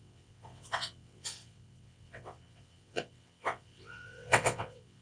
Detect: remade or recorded remade